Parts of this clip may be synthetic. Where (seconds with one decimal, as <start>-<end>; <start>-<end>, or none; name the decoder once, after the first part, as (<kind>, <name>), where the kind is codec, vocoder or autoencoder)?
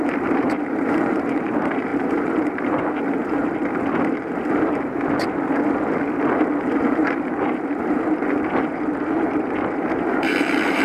0.0-3.2 (vocoder, BigVGAN v2); 6.6-10.8